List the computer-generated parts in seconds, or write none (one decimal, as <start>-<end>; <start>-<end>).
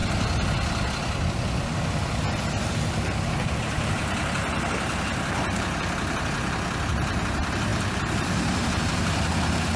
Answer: none